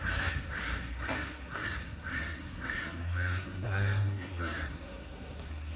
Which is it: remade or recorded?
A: remade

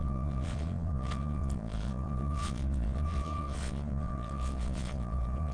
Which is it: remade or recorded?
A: remade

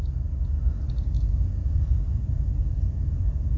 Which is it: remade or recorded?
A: recorded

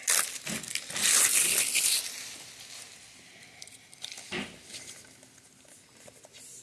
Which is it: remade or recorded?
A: recorded